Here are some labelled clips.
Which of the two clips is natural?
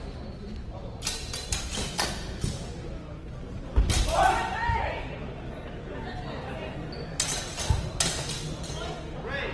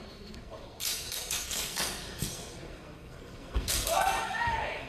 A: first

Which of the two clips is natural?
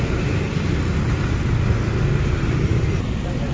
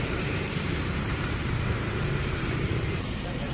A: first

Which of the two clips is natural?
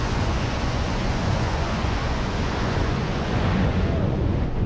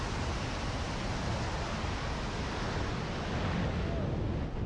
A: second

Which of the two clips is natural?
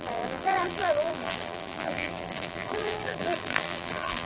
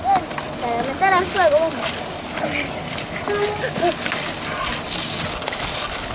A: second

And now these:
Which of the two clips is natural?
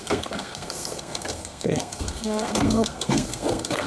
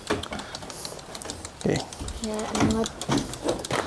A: second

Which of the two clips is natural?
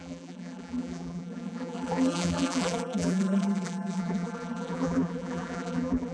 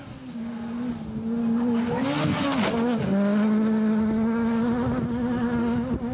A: second